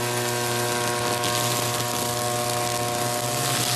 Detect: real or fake real